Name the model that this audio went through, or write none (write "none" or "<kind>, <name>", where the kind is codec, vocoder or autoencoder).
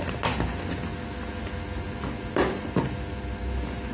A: none